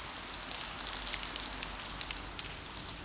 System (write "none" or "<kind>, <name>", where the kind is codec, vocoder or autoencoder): none